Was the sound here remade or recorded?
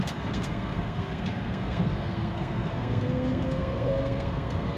remade